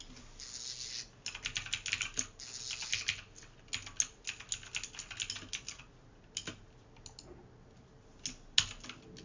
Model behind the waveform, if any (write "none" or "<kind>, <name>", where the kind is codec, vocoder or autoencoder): none